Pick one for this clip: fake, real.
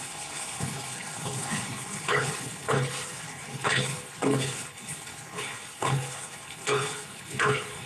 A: fake